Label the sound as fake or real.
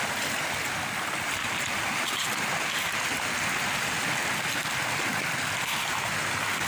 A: real